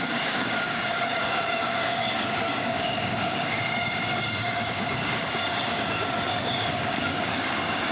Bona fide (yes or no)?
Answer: no